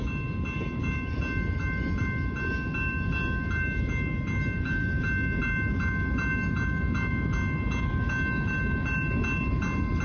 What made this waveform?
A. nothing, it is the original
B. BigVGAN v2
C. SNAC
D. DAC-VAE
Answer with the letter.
A